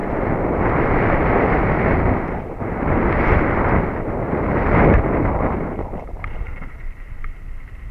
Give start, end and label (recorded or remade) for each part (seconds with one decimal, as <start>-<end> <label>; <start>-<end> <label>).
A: 0.0-7.9 recorded